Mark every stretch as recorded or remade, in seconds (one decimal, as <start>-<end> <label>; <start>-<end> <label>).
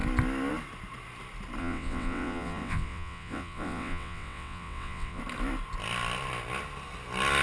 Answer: 0.0-1.6 recorded; 1.6-5.2 remade; 5.2-7.4 recorded